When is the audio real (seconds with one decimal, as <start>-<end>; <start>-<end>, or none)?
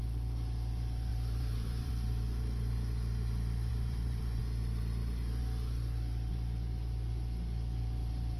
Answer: 0.0-1.1; 1.9-3.7; 4.4-8.4